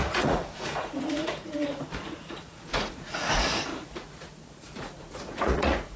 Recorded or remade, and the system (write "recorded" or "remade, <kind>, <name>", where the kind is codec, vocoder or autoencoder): remade, vocoder, Vocos